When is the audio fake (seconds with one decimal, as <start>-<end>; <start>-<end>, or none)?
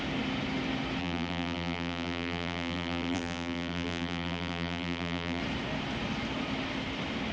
1.0-5.4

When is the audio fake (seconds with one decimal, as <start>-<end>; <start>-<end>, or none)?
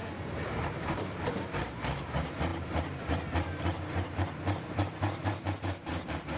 0.0-6.4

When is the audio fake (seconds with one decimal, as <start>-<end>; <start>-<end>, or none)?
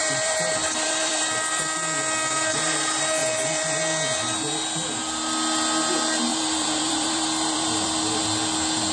0.0-1.6; 3.2-3.8; 6.3-8.2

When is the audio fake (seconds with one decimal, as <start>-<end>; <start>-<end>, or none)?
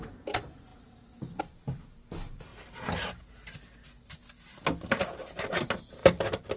0.0-0.7; 1.4-2.5; 4.9-6.0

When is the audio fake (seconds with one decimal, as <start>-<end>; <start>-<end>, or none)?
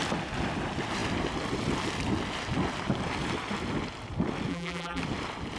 4.5-5.0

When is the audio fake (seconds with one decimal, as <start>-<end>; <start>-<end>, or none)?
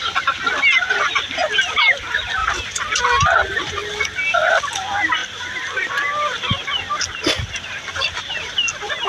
2.4-3.0; 5.2-5.9